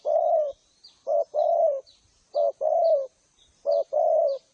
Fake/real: fake